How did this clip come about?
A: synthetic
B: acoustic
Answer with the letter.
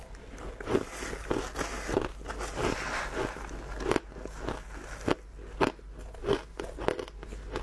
B